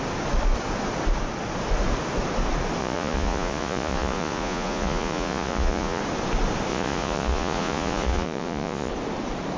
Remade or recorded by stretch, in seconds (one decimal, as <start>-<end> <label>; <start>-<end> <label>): 0.0-2.8 recorded; 2.8-6.0 remade; 6.0-6.7 recorded; 6.7-8.9 remade; 8.9-9.6 recorded